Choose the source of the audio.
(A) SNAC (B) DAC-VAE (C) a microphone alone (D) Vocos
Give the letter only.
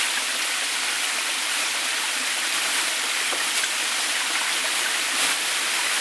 C